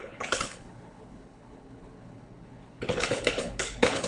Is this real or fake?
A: fake